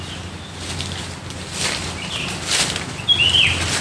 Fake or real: real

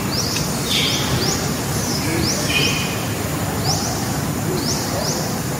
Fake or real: fake